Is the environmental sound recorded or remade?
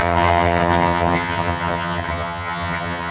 remade